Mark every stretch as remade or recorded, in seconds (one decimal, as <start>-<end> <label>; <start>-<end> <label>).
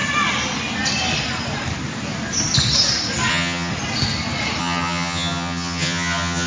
0.0-3.3 recorded; 3.3-3.7 remade; 3.7-4.6 recorded; 4.6-6.5 remade